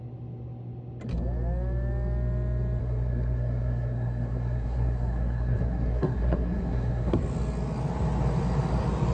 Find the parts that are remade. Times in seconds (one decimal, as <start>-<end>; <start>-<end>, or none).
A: 2.8-7.2